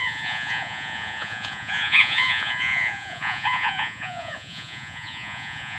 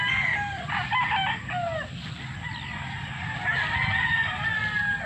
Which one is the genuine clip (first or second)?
second